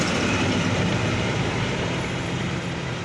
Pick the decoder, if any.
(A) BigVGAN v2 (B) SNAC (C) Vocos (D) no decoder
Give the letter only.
A